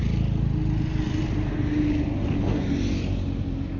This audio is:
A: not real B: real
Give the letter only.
B